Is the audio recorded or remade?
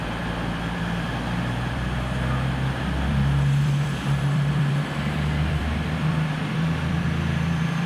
remade